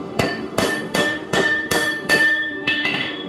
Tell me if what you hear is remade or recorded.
remade